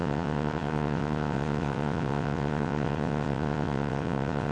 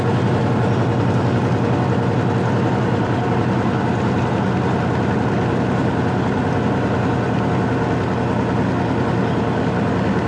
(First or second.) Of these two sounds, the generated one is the first